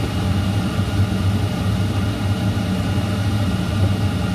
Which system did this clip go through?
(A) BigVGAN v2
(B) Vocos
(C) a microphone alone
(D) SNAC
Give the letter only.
C